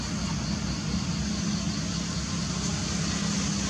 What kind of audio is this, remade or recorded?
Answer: recorded